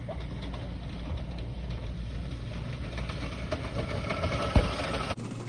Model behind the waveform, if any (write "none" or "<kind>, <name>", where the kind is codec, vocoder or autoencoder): none